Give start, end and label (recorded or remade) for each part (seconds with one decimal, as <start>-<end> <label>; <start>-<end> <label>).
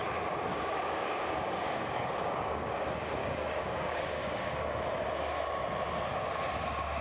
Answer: 0.0-0.5 recorded; 0.5-2.7 remade; 2.7-3.2 recorded; 3.2-4.5 remade; 4.5-7.0 recorded